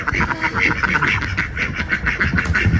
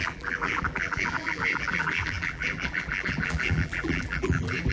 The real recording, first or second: first